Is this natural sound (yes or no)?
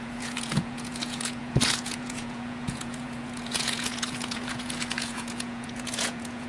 no